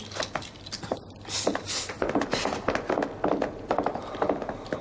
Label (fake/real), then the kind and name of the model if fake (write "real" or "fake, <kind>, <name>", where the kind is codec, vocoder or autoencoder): real